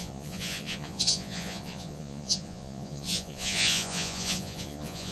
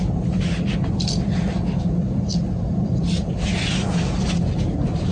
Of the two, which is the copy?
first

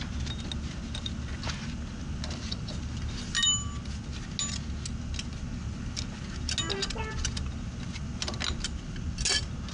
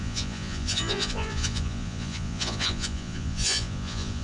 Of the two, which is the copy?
second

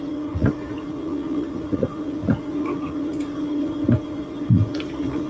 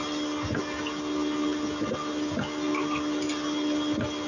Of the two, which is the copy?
first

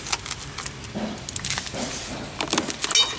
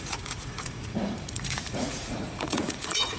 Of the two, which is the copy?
second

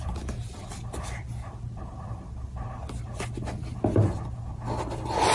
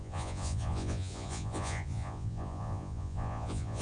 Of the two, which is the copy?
second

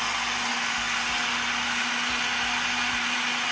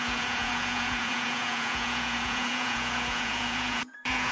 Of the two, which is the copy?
second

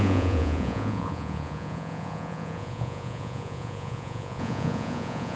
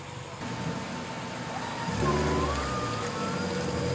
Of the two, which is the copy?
first